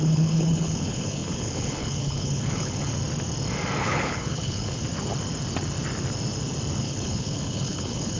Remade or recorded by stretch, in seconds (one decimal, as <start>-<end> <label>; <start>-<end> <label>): 0.0-2.9 remade; 2.9-3.8 recorded; 3.8-4.8 remade; 4.8-6.8 recorded; 6.8-8.2 remade